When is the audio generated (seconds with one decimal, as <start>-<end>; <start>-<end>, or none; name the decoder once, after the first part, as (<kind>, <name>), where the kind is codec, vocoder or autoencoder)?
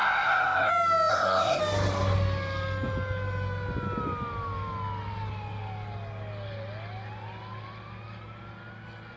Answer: 0.0-0.7 (codec, SNAC); 1.1-1.6